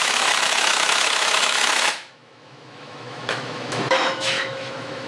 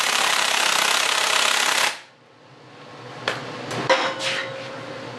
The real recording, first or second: second